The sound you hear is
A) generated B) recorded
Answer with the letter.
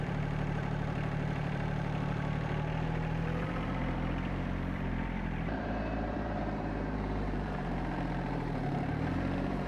A